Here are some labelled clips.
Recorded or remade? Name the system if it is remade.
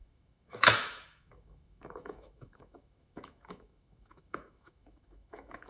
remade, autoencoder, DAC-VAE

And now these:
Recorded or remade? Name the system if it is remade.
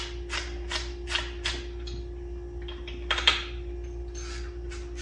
recorded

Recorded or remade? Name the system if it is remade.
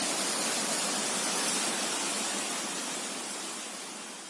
recorded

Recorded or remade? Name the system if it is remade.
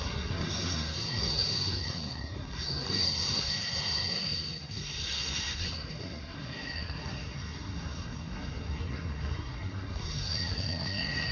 remade, codec, SNAC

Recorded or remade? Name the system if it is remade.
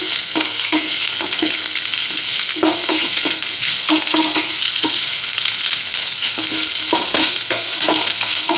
remade, codec, SNAC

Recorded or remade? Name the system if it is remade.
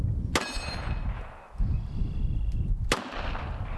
recorded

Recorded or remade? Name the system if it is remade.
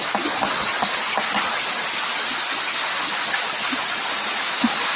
recorded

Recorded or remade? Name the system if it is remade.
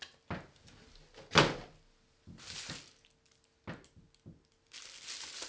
recorded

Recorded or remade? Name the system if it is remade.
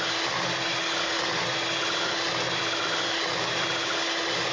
recorded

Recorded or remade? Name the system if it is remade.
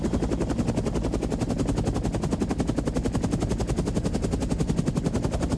recorded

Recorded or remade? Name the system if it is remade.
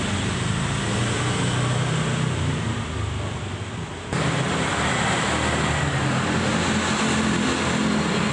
recorded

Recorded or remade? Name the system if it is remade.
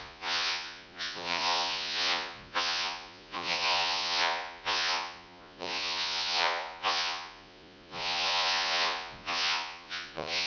remade, vocoder, Vocos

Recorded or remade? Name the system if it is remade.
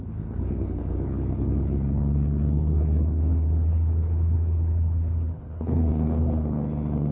remade, codec, HILCodec